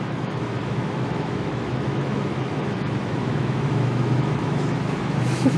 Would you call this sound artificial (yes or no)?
yes